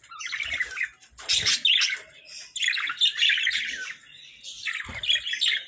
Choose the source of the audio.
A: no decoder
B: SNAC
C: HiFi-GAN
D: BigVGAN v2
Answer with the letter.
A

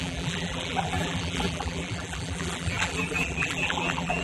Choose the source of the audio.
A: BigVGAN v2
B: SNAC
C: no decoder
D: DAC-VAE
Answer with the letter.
A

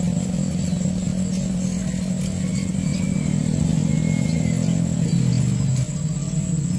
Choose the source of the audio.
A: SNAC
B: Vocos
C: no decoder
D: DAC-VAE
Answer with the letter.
C